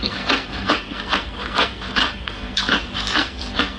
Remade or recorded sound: remade